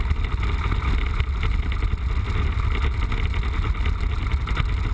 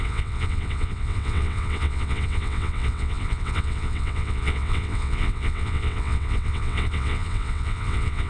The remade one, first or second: second